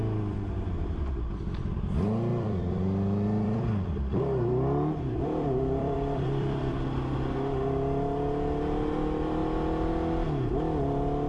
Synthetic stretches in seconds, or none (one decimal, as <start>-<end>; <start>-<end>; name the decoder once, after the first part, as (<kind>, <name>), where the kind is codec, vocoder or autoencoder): 2.3-6.7 (vocoder, BigVGAN v2)

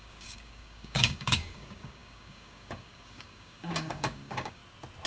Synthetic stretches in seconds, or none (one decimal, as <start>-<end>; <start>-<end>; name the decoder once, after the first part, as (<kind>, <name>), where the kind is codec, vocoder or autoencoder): 0.0-4.6 (codec, DAC)

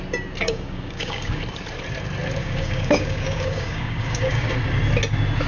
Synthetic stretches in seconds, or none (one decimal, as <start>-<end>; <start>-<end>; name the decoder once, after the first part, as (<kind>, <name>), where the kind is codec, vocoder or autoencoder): 0.4-1.4 (codec, DAC); 2.4-4.5